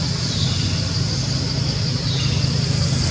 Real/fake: real